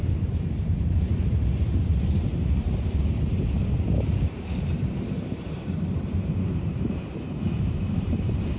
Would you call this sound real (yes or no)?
no